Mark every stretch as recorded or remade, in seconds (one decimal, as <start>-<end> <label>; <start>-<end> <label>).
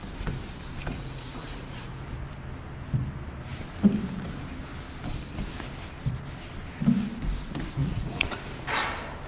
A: 0.0-0.9 recorded; 0.9-2.0 remade; 2.0-7.8 recorded; 7.8-8.4 remade; 8.4-9.3 recorded